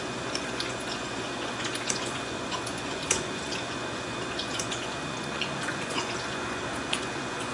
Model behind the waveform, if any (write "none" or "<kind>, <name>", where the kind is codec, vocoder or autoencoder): vocoder, Vocos